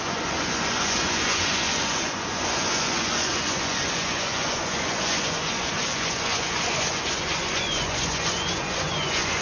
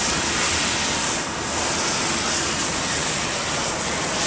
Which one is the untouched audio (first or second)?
second